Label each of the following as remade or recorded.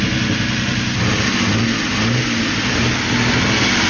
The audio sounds recorded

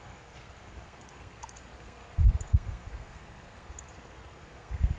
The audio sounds remade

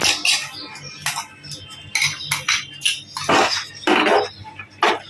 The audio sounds recorded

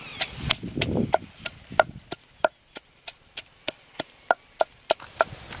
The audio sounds recorded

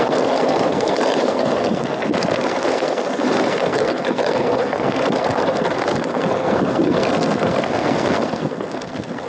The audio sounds remade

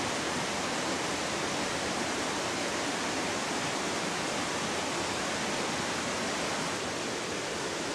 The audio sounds recorded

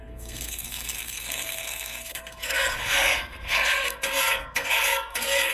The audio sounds remade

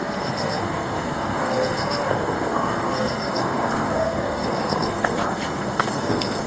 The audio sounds remade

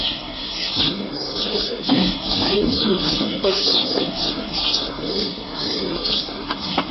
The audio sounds remade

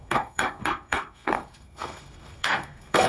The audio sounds remade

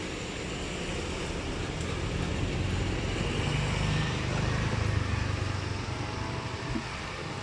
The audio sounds recorded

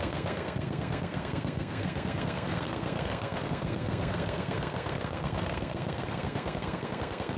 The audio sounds remade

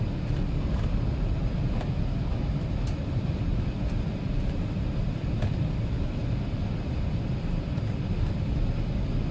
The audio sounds recorded